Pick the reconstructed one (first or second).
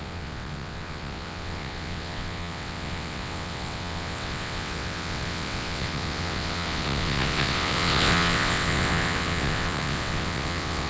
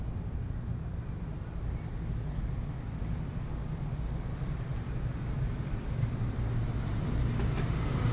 first